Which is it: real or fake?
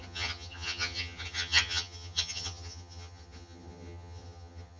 fake